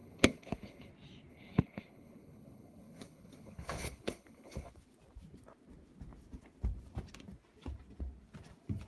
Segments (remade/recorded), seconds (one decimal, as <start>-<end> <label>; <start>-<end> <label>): 0.0-0.9 remade; 0.9-1.3 recorded; 1.3-4.7 remade; 4.7-8.9 recorded